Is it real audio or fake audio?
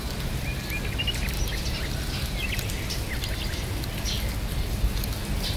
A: real